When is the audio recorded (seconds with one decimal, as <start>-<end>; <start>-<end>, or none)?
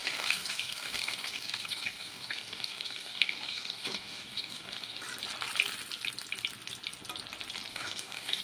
5.0-7.7